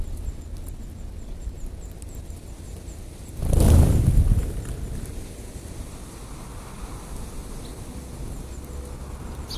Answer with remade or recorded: recorded